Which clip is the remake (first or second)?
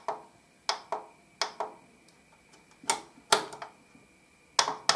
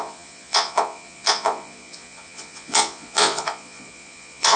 second